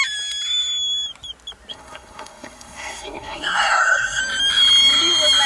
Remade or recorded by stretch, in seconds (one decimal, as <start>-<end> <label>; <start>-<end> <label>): 0.0-1.7 recorded; 1.7-4.2 remade; 4.2-5.5 recorded